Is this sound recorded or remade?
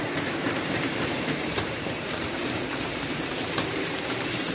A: remade